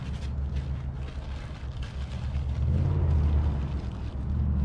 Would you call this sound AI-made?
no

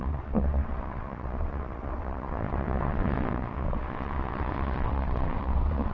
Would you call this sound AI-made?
yes